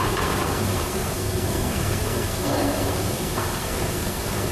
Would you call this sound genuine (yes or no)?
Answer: no